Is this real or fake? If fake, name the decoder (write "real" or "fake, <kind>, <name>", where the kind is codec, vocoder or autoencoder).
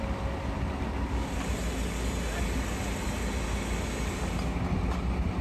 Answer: real